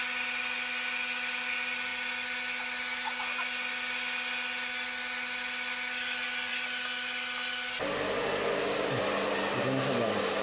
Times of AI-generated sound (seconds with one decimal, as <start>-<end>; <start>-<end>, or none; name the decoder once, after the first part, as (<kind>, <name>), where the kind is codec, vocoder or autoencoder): none